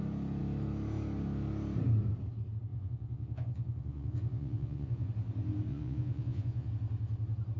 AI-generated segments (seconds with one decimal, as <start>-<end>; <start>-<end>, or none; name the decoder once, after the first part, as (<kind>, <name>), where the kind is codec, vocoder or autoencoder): 2.7-5.1 (vocoder, Vocos); 5.7-6.7